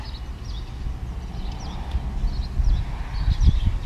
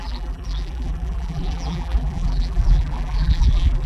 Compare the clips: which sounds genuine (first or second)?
first